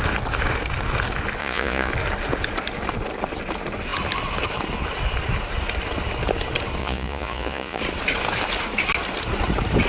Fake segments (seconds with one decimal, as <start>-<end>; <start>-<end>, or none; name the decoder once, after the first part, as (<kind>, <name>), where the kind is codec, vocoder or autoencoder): 1.4-1.9 (vocoder, Vocos); 6.8-7.8